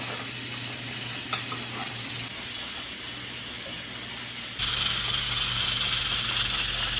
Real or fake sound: real